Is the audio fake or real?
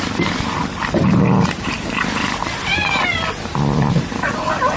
real